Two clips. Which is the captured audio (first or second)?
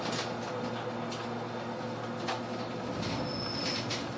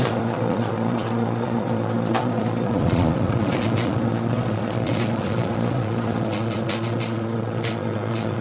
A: first